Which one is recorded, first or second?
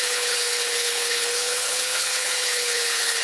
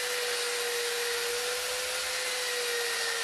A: second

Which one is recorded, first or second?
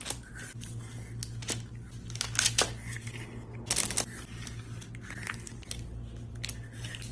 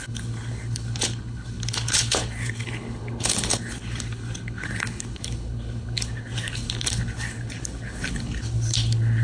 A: first